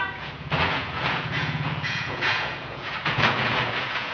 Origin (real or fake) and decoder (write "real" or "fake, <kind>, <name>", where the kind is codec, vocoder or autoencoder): fake, vocoder, Vocos